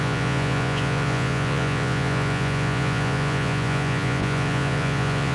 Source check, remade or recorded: remade